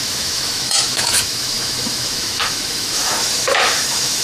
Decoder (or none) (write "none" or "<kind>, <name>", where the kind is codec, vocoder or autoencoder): autoencoder, DAC-VAE